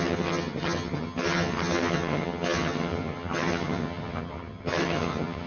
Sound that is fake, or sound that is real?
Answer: fake